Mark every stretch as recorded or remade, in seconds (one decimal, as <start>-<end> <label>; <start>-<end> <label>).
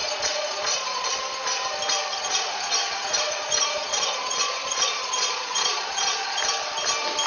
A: 0.0-1.1 remade; 1.1-2.1 recorded; 2.1-6.4 remade; 6.4-7.3 recorded